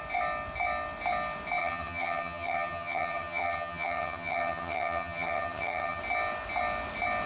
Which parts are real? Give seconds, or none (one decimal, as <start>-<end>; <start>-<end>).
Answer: 0.0-1.6; 6.0-7.3